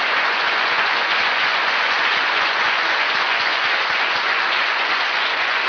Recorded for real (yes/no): no